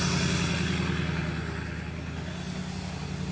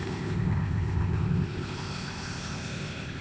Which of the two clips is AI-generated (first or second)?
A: second